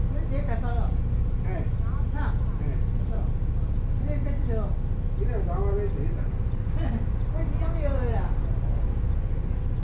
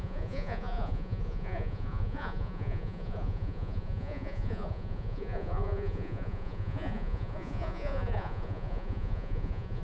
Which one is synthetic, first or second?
second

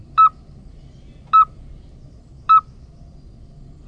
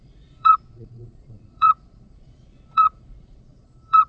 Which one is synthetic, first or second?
second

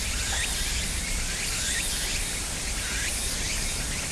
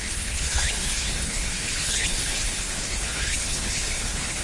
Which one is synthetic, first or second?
second